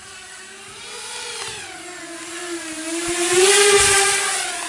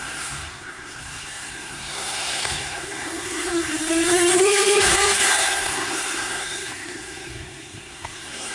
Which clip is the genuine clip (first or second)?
first